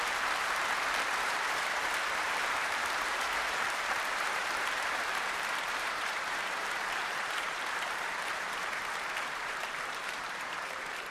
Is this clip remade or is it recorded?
remade